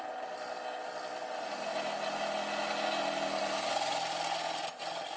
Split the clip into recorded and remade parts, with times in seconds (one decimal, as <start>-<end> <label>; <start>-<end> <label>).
0.0-5.2 recorded